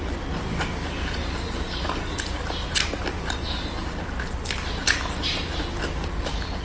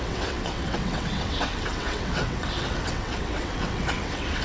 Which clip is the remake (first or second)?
second